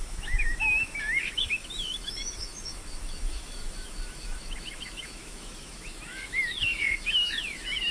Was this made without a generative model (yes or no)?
no